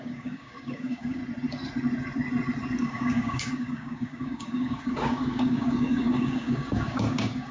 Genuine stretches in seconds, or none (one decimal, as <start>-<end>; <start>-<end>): 1.2-2.8